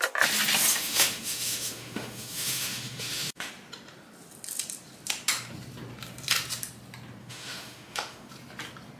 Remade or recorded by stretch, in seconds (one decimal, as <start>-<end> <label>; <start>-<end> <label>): 0.0-0.7 recorded; 0.7-3.5 remade; 3.5-7.2 recorded; 7.2-8.3 remade; 8.3-9.0 recorded